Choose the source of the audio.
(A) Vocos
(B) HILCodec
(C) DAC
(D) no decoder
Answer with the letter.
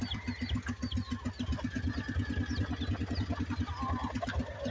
D